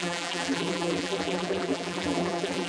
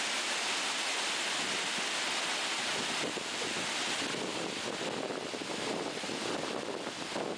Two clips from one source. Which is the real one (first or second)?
second